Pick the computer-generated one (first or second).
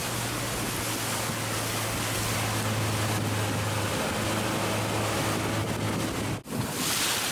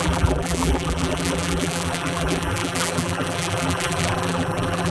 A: second